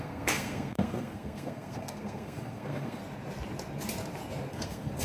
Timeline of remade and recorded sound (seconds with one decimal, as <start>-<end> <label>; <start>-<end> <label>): 0.0-3.0 remade; 3.0-4.5 recorded; 4.5-5.0 remade